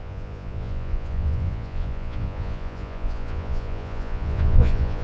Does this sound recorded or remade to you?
remade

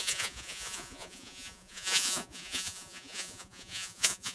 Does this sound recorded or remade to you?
remade